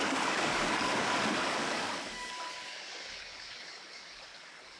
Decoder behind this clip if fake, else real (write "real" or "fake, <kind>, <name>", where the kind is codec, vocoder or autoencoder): fake, codec, DAC